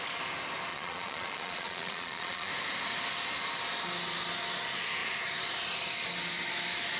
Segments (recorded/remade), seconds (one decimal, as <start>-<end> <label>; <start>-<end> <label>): 0.0-0.7 recorded; 0.7-2.5 remade; 2.5-7.0 recorded